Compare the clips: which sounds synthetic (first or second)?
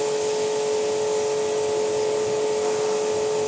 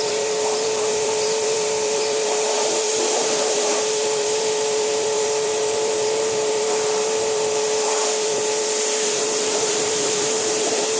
second